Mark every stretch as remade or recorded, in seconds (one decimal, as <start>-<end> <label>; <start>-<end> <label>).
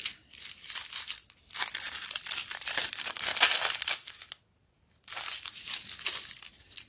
0.0-6.9 recorded